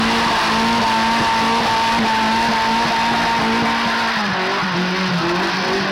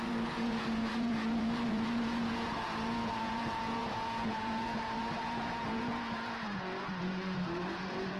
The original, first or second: first